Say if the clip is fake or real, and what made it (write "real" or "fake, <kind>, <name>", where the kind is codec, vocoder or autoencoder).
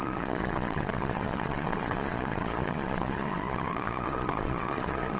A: fake, vocoder, Vocos